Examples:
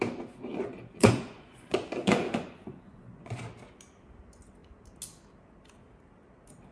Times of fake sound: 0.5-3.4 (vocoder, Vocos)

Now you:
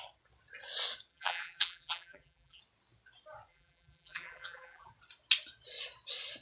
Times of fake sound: 1.1-2.6 (vocoder, BigVGAN v2); 3.5-4.9

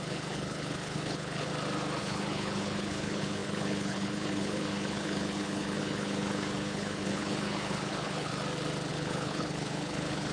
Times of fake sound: 0.0-1.5 (codec, HILCodec); 2.0-8.3; 8.9-10.3

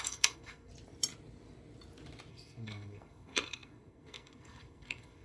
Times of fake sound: 0.0-0.7 (codec, SNAC); 2.3-5.2

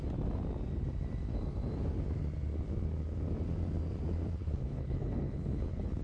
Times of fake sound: 4.4-6.0 (codec, HILCodec)